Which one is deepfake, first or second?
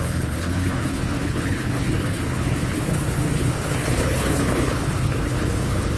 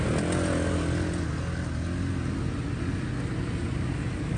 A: first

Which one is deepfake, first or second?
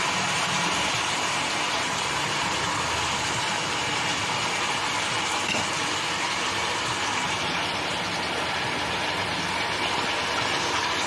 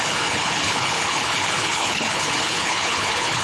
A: second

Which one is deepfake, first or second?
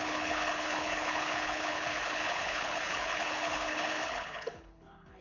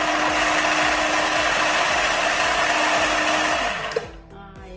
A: first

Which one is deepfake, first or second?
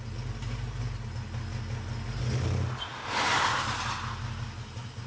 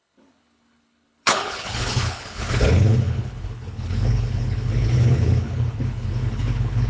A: second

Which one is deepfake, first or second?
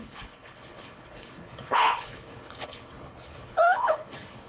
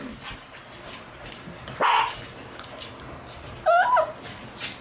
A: first